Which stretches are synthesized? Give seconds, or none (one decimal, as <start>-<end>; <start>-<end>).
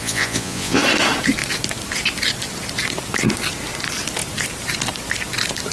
0.0-0.8